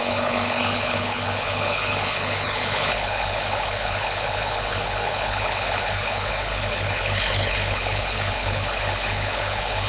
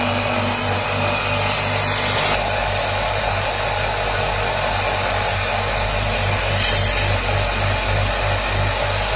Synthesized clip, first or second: first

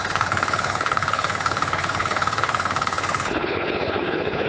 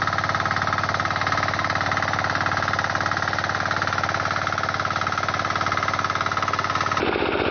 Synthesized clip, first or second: first